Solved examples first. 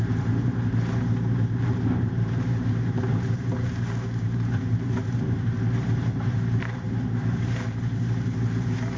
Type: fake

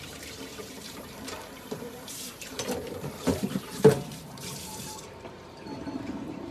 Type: fake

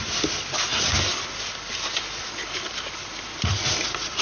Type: real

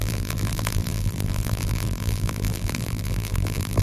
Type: fake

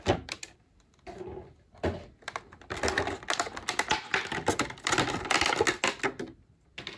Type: real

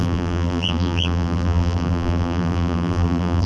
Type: fake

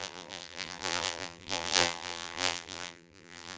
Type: fake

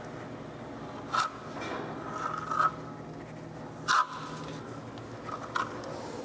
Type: real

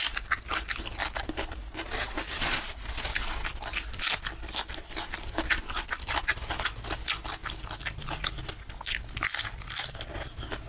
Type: real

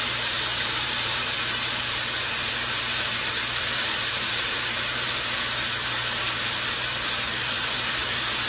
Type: fake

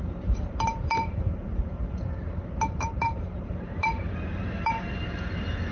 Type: fake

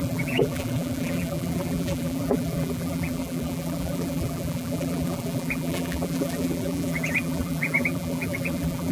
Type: fake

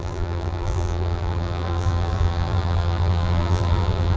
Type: fake